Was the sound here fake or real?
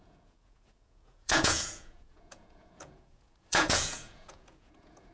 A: fake